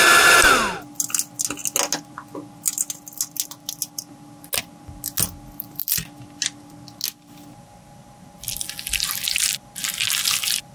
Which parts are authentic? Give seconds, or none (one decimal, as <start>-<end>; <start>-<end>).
0.0-10.7